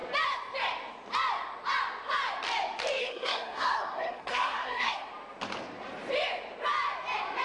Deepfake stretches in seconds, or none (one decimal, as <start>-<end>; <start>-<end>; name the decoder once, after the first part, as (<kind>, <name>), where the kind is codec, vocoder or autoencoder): 3.0-5.1 (codec, SNAC)